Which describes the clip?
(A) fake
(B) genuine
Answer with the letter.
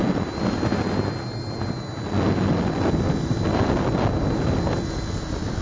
B